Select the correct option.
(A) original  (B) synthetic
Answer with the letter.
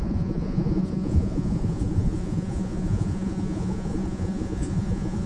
B